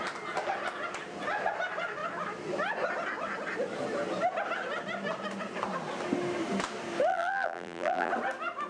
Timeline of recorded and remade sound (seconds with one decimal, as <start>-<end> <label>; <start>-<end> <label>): 0.0-7.1 recorded; 7.1-8.1 remade; 8.1-8.7 recorded